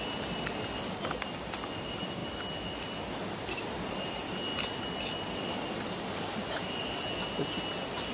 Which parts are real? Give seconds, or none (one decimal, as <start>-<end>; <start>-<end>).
0.0-8.1